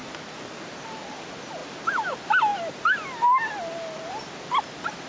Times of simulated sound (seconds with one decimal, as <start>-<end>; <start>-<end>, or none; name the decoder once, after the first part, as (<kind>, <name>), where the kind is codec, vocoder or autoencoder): 0.0-1.0 (vocoder, BigVGAN v2)